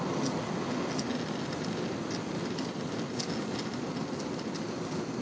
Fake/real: real